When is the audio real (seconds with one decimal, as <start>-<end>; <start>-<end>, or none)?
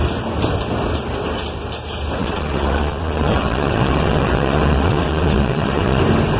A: 0.0-2.2; 6.0-6.4